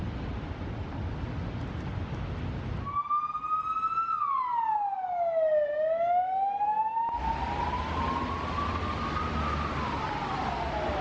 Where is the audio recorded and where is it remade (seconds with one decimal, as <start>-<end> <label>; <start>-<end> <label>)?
0.0-11.0 recorded